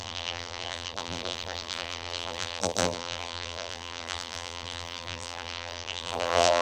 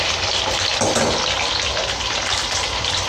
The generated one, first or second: first